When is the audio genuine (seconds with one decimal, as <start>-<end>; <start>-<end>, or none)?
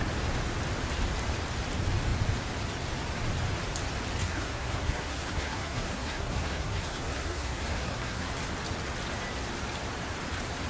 0.0-4.2; 8.3-10.7